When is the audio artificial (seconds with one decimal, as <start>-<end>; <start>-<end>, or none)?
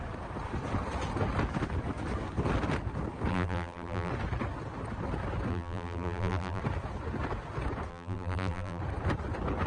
3.3-4.1; 5.5-6.6; 7.9-8.8